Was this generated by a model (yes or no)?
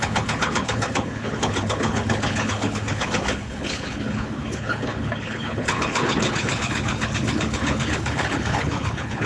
yes